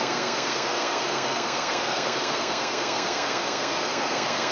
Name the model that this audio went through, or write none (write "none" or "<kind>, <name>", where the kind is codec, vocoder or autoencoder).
codec, SNAC